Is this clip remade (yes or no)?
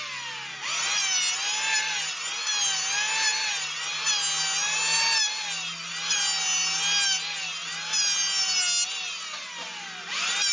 no